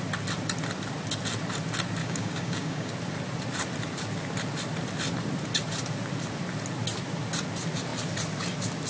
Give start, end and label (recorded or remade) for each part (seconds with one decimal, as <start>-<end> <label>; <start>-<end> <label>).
0.0-2.0 recorded; 2.0-2.9 remade; 2.9-8.9 recorded